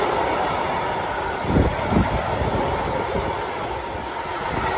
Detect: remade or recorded recorded